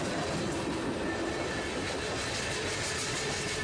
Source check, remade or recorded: recorded